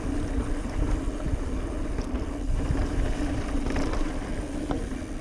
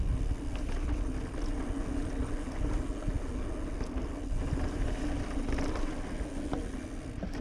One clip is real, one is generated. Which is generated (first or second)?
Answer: first